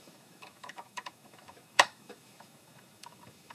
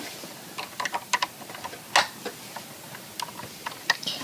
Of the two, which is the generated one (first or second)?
first